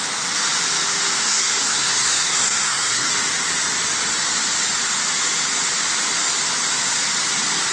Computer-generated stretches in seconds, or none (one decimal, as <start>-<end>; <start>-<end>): 1.2-3.1

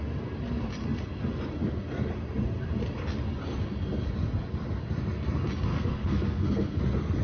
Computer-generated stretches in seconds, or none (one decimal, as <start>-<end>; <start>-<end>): 5.7-6.8

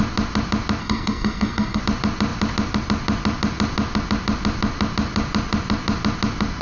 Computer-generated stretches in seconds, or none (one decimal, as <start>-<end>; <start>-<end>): 0.8-1.8

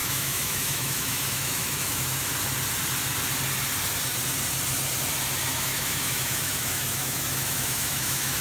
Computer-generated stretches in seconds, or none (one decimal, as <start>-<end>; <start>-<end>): 0.0-2.3; 5.5-8.4

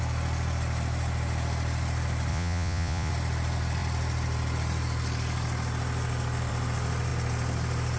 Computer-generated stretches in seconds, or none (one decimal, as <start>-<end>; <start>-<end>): 2.3-3.1